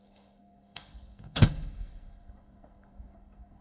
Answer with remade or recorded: remade